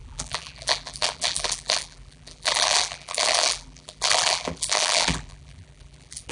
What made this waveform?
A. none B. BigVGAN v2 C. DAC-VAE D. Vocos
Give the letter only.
B